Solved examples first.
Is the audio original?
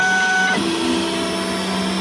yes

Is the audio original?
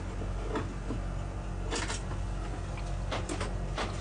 yes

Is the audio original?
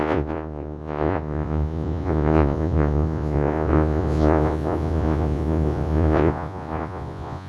no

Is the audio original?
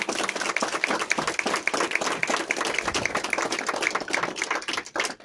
yes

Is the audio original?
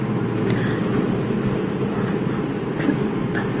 yes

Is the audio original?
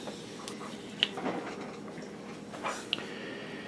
yes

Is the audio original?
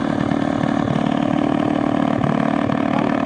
yes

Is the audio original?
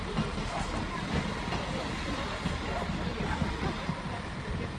yes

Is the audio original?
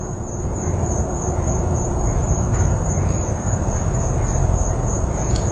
no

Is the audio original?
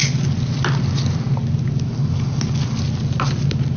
yes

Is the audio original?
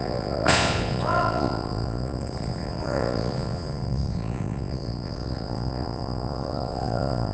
no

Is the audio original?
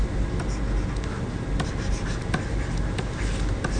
yes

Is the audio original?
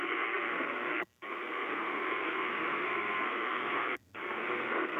no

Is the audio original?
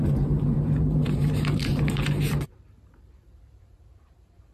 no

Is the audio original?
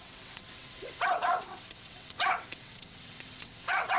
no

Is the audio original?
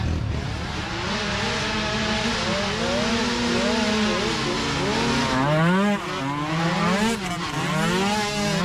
yes